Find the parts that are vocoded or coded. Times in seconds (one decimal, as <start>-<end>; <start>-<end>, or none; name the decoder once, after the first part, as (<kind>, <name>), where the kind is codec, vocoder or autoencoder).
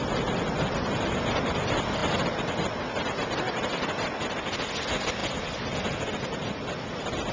none